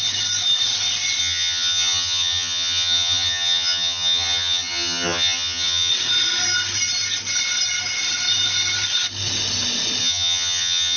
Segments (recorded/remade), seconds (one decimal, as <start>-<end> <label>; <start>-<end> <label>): 0.0-1.2 recorded; 1.2-5.9 remade; 5.9-10.0 recorded; 10.0-11.0 remade